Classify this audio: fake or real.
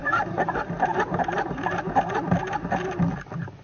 real